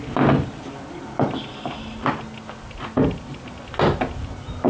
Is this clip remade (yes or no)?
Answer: no